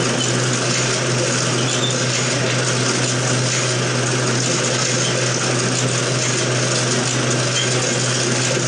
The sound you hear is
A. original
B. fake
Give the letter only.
A